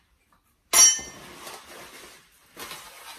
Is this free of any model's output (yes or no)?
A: yes